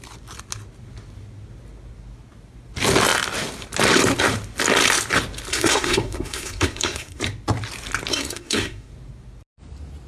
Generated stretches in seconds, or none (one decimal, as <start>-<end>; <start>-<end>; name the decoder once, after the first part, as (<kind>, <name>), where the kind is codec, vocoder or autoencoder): 5.5-7.2 (codec, SNAC); 8.1-8.9